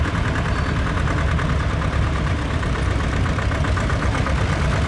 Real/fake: real